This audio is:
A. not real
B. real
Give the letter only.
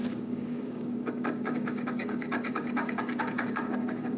A